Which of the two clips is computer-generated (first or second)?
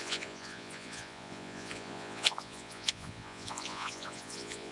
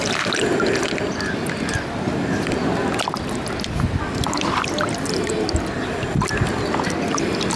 first